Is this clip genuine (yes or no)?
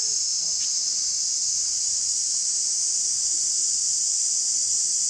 yes